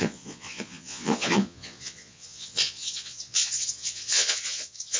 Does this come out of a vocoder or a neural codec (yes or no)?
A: yes